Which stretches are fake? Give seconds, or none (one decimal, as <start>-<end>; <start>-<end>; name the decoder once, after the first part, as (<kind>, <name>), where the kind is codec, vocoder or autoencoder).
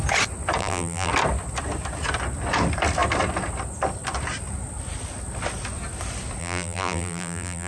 0.6-1.1 (vocoder, BigVGAN v2); 6.4-7.7